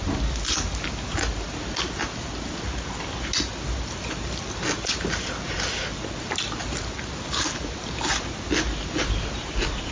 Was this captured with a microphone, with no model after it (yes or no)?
yes